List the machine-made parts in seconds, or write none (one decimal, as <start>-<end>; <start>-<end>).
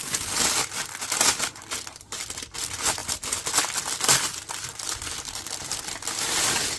none